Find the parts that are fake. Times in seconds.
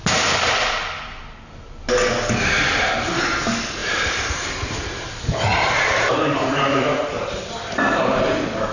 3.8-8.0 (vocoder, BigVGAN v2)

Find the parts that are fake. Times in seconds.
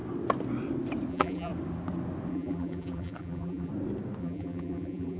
1.1-1.5 (vocoder, BigVGAN v2); 2.3-3.7; 4.2-5.2